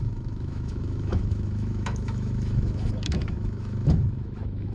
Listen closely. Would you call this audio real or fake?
fake